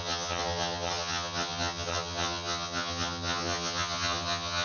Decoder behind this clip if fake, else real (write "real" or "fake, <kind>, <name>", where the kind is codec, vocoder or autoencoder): fake, vocoder, HiFi-GAN